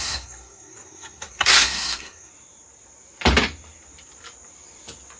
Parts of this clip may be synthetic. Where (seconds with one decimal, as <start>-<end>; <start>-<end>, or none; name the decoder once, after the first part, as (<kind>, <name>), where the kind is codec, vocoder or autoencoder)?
0.0-2.3 (codec, SNAC)